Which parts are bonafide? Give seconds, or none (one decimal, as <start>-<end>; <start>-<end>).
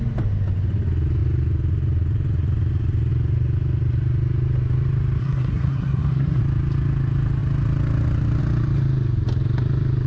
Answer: 0.0-5.2; 6.4-10.1